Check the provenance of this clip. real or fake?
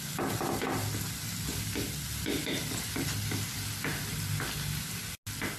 real